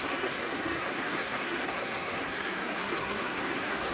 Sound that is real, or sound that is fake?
fake